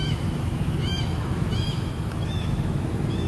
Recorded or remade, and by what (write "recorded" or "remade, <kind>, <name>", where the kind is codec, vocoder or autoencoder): remade, autoencoder, DAC-VAE